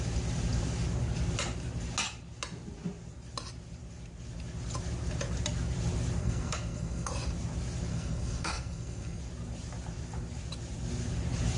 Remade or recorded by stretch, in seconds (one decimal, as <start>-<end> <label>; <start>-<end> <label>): 0.0-6.2 recorded; 6.2-7.1 remade; 7.1-7.9 recorded; 7.9-9.2 remade; 9.2-11.6 recorded